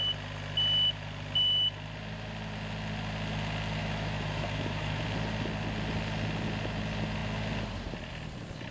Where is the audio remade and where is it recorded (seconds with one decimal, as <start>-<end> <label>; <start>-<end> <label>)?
0.0-3.8 recorded; 3.8-5.0 remade; 5.0-8.7 recorded